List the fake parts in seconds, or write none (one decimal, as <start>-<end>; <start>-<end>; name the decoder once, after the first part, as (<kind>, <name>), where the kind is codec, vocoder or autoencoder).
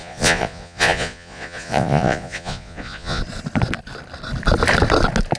0.0-3.2 (vocoder, Vocos)